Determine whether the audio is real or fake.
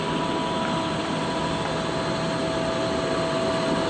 real